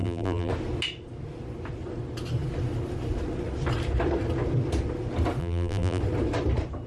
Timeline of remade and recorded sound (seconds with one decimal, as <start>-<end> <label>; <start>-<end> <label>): 0.0-0.5 remade; 0.5-5.4 recorded; 5.4-6.0 remade; 6.0-6.9 recorded